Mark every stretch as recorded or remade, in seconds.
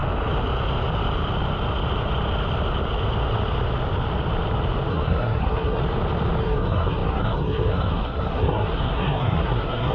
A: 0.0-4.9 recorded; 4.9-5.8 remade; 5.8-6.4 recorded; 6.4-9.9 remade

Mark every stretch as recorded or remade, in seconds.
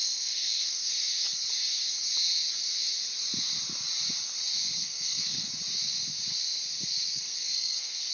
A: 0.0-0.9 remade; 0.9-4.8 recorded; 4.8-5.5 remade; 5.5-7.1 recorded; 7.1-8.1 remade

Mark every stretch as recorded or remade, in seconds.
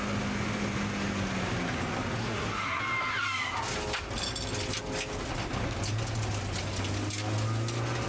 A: 0.0-2.2 recorded; 2.2-2.8 remade; 2.8-8.1 recorded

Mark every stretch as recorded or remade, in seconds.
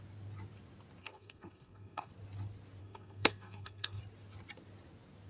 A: 0.0-1.0 recorded; 1.0-2.1 remade; 2.1-2.8 recorded; 2.8-4.0 remade; 4.0-5.3 recorded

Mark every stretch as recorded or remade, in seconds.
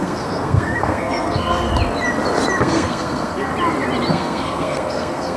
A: 0.0-1.7 remade; 1.7-2.6 recorded; 2.6-3.5 remade; 3.5-4.1 recorded; 4.1-5.4 remade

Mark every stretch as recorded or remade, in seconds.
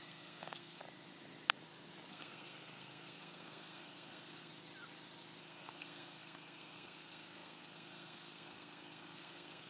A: 0.0-0.8 remade; 0.8-2.1 recorded; 2.1-4.5 remade; 4.5-5.4 recorded; 5.4-9.7 remade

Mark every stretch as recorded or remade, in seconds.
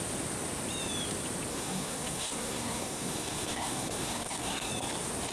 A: 0.0-1.5 recorded; 1.5-4.7 remade; 4.7-5.3 recorded